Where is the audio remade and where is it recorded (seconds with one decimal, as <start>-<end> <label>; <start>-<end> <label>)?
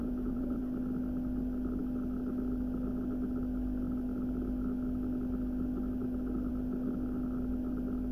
0.0-0.6 remade; 0.6-8.1 recorded